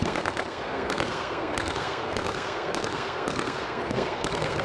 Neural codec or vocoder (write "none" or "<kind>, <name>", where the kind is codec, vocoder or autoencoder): codec, SNAC